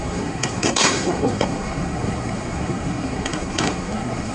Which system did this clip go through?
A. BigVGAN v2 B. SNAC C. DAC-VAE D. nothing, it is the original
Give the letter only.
B